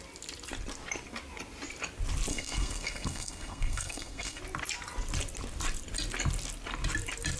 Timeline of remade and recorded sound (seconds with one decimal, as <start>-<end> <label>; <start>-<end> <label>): 0.0-2.3 recorded; 2.3-4.4 remade; 4.4-7.4 recorded

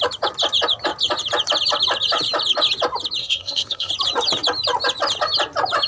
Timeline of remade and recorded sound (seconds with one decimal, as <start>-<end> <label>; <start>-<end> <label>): 0.0-3.2 recorded; 3.2-3.9 remade; 3.9-5.9 recorded

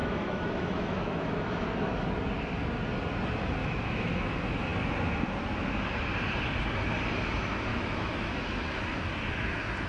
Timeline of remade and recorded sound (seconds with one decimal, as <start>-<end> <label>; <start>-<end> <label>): 0.0-2.1 remade; 2.1-3.6 recorded; 3.6-4.3 remade; 4.3-7.7 recorded; 7.7-8.7 remade; 8.7-9.9 recorded

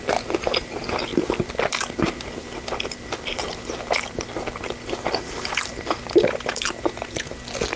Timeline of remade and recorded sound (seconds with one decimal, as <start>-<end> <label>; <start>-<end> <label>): 0.0-7.8 recorded

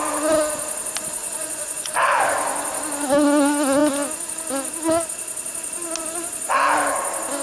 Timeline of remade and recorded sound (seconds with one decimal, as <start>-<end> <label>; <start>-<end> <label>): 0.0-1.2 recorded; 1.2-1.9 remade; 1.9-7.4 recorded

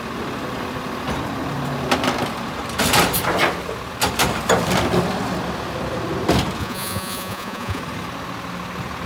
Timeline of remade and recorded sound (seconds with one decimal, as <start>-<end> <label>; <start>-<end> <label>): 0.0-6.6 recorded; 6.6-7.8 remade; 7.8-9.1 recorded

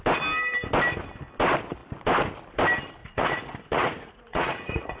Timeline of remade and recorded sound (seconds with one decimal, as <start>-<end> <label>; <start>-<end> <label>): 0.0-3.0 recorded; 3.0-5.0 remade